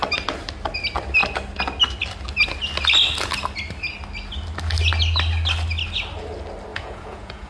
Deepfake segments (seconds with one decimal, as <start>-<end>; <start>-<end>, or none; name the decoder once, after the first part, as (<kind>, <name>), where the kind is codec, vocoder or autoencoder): 6.7-7.5 (vocoder, Vocos)